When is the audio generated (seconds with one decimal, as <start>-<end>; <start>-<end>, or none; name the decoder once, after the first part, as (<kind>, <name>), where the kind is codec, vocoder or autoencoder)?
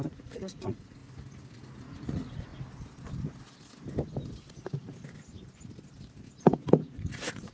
0.0-1.0 (vocoder, Vocos); 2.0-2.5; 6.4-7.5